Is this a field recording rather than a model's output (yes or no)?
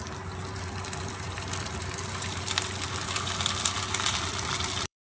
no